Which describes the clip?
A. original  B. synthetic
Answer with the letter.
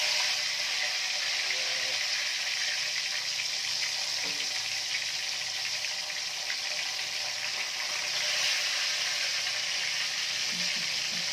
A